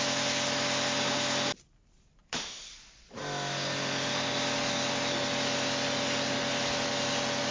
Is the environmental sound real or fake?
real